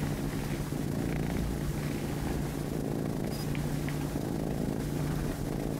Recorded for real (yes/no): yes